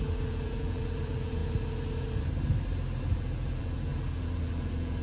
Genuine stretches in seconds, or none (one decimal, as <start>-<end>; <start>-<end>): 1.4-3.0